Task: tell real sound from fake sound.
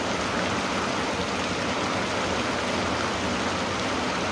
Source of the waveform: real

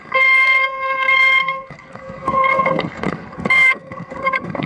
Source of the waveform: fake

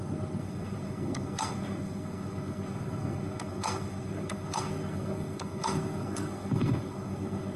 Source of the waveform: fake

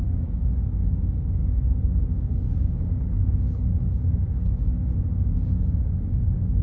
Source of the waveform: fake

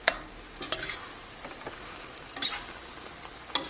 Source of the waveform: real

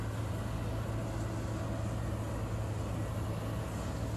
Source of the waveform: real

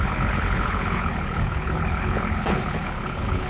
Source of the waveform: fake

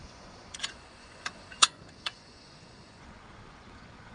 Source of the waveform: fake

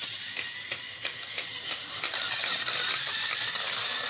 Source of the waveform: real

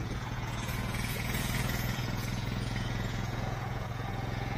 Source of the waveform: fake